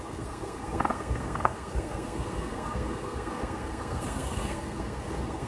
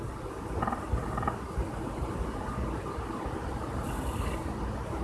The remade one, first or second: first